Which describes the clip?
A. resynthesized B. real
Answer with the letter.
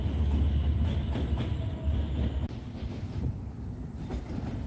B